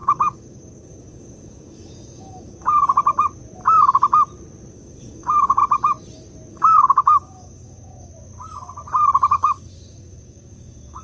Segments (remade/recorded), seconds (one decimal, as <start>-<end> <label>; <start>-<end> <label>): 0.0-2.8 remade; 2.8-4.7 recorded; 4.7-5.6 remade; 5.6-6.5 recorded; 6.5-8.1 remade; 8.1-9.3 recorded; 9.3-11.0 remade